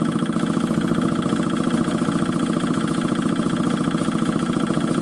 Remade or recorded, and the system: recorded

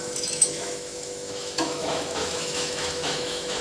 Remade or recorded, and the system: remade, autoencoder, DAC-VAE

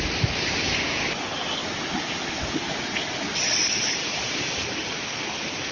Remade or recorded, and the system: recorded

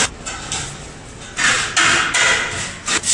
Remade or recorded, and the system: recorded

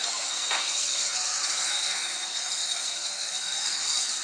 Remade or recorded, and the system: remade, codec, SNAC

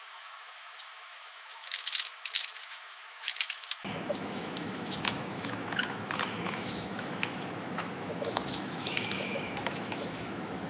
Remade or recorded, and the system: remade, autoencoder, DAC-VAE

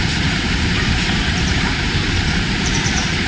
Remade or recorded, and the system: remade, vocoder, BigVGAN v2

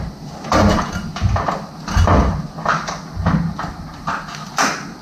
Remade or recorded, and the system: recorded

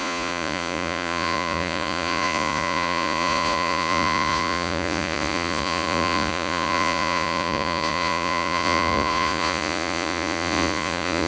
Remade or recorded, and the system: remade, vocoder, Vocos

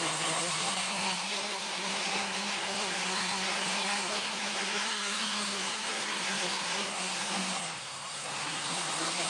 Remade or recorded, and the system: remade, codec, SNAC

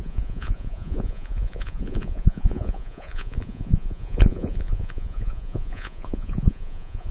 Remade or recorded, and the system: remade, vocoder, Vocos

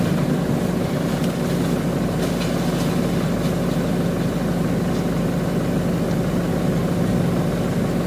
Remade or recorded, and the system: recorded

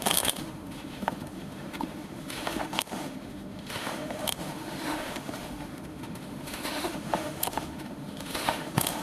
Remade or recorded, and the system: remade, autoencoder, DAC-VAE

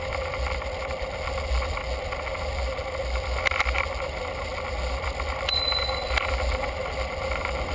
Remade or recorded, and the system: recorded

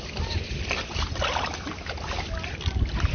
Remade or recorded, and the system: recorded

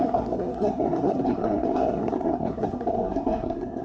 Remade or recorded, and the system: remade, codec, SNAC